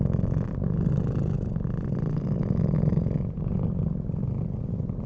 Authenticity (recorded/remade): recorded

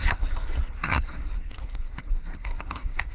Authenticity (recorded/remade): remade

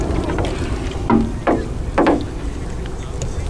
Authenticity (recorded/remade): recorded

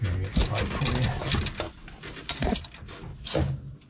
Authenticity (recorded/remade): recorded